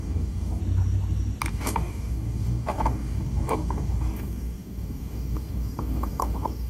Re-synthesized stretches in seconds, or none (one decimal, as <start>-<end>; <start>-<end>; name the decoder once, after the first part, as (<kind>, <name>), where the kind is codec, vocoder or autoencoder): 0.0-0.6 (codec, DAC); 1.5-6.7